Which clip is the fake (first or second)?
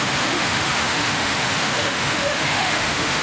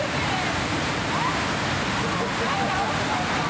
first